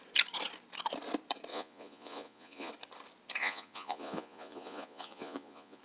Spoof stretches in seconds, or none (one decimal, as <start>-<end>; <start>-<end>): 1.5-2.7; 3.4-5.8